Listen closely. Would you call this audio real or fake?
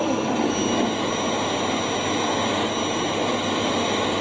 real